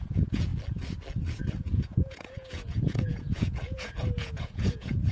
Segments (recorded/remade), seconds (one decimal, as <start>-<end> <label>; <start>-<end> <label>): 0.0-0.5 remade; 0.5-1.4 recorded; 1.4-5.1 remade